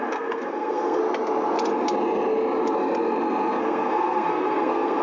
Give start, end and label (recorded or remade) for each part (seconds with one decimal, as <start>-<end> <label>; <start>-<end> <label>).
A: 0.0-1.0 remade; 1.0-3.6 recorded; 3.6-5.0 remade